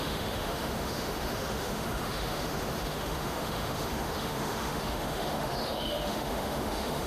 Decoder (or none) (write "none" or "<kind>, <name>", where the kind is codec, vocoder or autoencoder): autoencoder, DAC-VAE